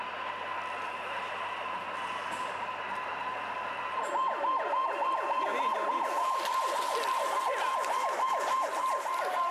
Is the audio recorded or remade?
remade